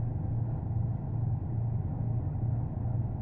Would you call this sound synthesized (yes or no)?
no